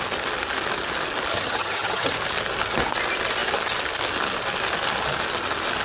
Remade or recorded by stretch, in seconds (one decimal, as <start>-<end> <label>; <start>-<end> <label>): 0.0-1.3 recorded; 1.3-2.1 remade; 2.1-5.8 recorded